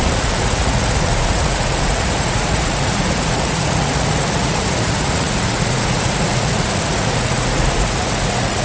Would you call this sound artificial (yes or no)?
yes